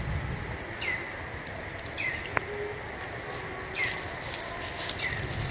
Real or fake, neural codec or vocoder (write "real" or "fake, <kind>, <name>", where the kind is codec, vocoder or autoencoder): real